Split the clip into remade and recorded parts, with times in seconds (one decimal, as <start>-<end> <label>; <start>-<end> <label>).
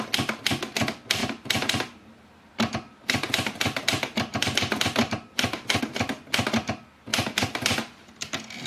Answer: 0.0-1.2 recorded; 1.2-5.8 remade; 5.8-7.1 recorded; 7.1-8.0 remade; 8.0-8.7 recorded